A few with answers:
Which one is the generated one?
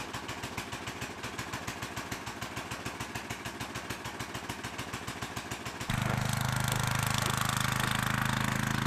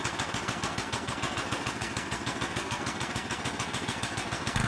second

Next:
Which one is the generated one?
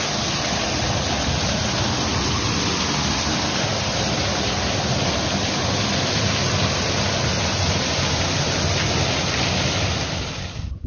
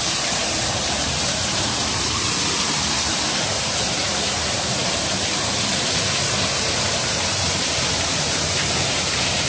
second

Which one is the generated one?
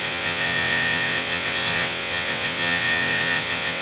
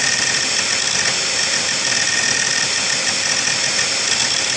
first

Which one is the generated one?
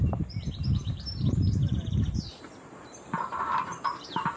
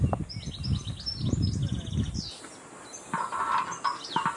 first